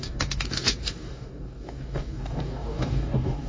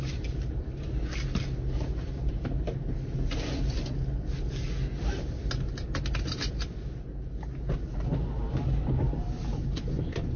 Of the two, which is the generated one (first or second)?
first